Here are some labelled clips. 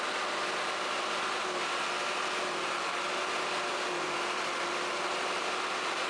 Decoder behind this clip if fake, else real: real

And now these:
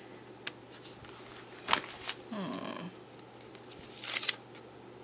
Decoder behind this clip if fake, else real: real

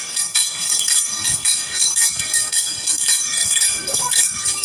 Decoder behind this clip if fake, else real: fake, codec, SNAC